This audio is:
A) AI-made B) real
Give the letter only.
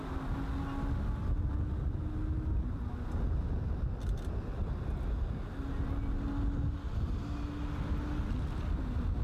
B